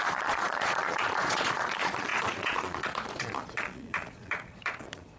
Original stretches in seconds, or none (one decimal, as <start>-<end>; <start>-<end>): none